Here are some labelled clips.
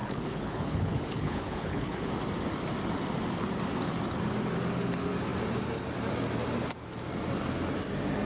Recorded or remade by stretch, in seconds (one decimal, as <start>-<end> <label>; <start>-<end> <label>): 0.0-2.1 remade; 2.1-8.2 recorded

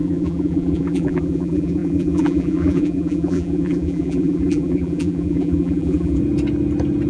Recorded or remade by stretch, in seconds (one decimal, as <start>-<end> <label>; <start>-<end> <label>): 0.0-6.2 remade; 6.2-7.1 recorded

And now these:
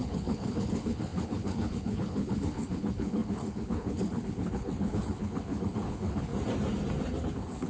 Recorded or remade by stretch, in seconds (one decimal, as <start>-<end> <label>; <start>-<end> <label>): 0.0-6.3 remade; 6.3-7.3 recorded; 7.3-7.7 remade

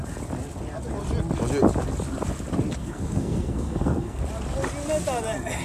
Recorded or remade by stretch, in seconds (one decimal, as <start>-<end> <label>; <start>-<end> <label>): 0.0-2.8 recorded; 2.8-4.2 remade; 4.2-5.6 recorded

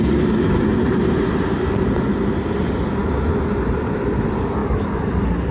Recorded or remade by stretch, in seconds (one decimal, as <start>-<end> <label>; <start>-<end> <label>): 0.0-3.0 recorded; 3.0-3.8 remade; 3.8-4.6 recorded; 4.6-5.1 remade; 5.1-5.5 recorded

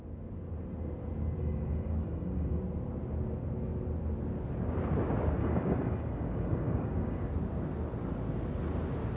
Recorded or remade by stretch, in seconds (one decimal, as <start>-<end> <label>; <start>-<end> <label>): 0.0-1.4 recorded; 1.4-2.6 remade; 2.6-5.4 recorded; 5.4-7.3 remade; 7.3-9.2 recorded